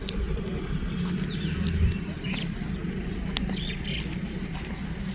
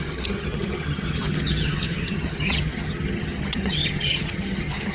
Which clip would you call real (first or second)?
first